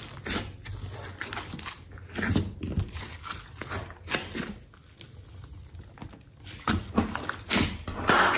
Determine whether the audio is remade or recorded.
recorded